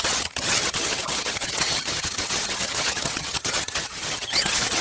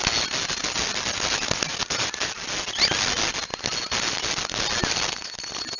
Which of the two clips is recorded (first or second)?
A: second